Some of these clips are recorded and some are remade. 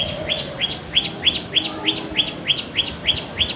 recorded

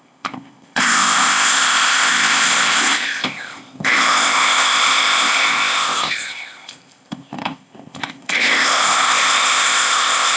remade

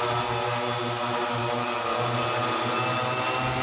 recorded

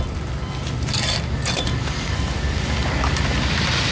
recorded